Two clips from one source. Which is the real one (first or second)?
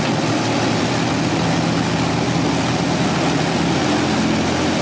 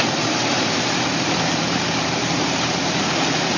first